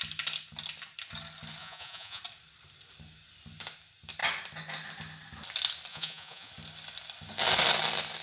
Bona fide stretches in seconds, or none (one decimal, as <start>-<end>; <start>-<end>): 0.0-1.6; 2.2-5.9; 6.5-8.2